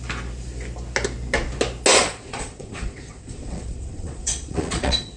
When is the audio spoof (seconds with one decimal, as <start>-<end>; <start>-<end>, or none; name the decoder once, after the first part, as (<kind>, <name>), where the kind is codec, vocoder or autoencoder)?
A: 1.9-5.2 (vocoder, Vocos)

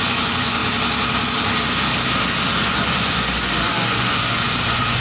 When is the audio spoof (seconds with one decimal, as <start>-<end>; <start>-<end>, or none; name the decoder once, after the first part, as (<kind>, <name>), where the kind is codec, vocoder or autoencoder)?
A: 0.0-0.6 (vocoder, Vocos); 2.6-5.0

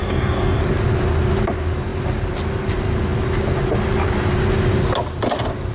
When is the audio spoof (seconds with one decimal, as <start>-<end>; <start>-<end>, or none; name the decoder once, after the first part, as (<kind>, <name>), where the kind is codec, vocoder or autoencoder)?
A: 0.0-0.6 (codec, DAC)

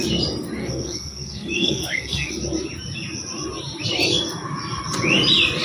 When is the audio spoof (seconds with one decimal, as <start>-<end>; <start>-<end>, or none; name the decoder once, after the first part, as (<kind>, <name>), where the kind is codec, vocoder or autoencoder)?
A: 0.6-2.3 (codec, SNAC)

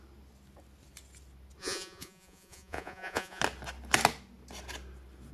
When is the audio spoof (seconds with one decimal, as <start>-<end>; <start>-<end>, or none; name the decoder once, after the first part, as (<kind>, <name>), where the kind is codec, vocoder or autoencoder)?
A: 1.6-3.4 (vocoder, Vocos)

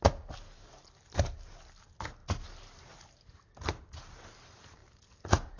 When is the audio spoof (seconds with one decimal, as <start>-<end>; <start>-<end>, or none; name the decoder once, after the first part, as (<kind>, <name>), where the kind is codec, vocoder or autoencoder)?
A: 4.8-5.6 (vocoder, BigVGAN v2)

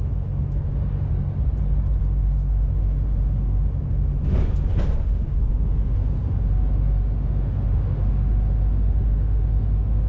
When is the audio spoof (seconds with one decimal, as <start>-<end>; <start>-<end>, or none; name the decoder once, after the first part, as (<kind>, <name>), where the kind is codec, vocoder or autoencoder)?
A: 0.0-1.1 (autoencoder, DAC-VAE); 2.0-10.1